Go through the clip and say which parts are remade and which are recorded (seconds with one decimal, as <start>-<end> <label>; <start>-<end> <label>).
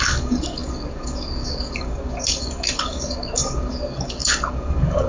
0.0-5.1 remade